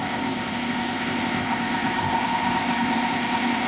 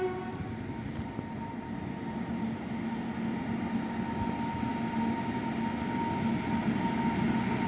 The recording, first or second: second